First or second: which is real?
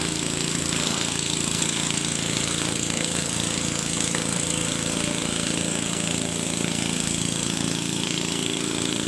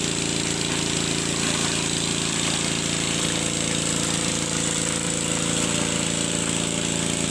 second